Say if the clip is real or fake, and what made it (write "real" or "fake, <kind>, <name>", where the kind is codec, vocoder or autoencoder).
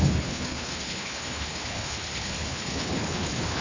fake, codec, HILCodec